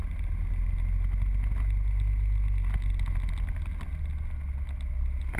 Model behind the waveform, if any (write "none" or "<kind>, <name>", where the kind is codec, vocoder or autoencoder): none